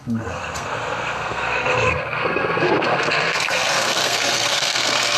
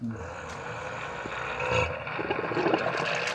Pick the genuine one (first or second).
second